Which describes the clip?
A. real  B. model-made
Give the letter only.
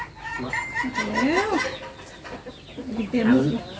A